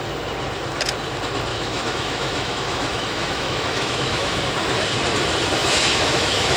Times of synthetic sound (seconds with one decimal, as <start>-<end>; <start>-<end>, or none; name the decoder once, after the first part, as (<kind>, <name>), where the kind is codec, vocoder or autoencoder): 1.5-4.4 (autoencoder, DAC-VAE); 5.6-6.6